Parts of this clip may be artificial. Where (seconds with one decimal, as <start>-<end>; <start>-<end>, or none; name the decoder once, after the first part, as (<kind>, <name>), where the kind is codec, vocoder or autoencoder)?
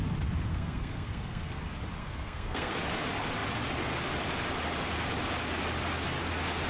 0.5-1.6 (codec, SNAC); 2.0-2.7